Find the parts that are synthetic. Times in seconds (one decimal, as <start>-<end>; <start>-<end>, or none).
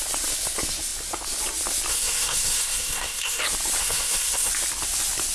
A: 1.9-3.4; 3.8-4.5